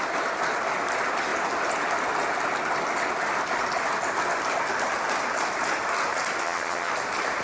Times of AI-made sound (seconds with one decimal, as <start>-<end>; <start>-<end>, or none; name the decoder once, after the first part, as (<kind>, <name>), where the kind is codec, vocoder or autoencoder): 6.4-6.9 (vocoder, HiFi-GAN)